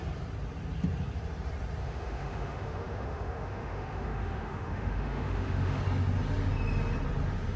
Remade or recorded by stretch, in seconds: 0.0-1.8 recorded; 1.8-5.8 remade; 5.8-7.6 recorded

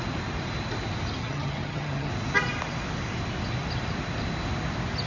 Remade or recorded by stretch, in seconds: 0.0-1.2 recorded; 1.2-2.1 remade; 2.1-5.1 recorded

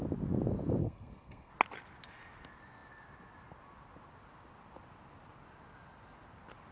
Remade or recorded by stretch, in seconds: 0.0-0.8 recorded; 0.8-1.5 remade; 1.5-6.7 recorded

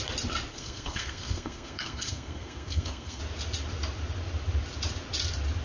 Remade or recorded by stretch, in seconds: 0.0-0.5 recorded; 0.5-3.2 remade; 3.2-5.6 recorded

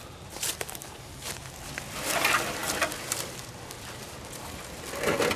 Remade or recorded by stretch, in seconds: 0.0-5.4 recorded